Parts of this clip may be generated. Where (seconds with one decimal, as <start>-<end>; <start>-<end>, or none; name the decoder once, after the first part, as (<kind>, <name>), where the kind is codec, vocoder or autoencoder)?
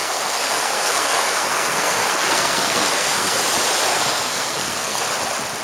0.0-3.4 (codec, SNAC); 3.9-5.0